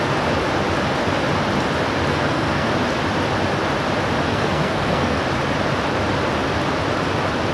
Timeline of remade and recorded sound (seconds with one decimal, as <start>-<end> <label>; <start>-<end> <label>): 0.0-2.1 recorded; 2.1-2.7 remade; 2.7-4.3 recorded; 4.3-5.2 remade; 5.2-7.5 recorded